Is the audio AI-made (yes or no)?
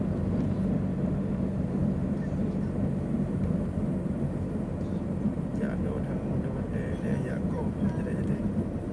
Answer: yes